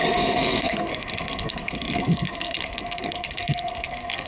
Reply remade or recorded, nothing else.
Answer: remade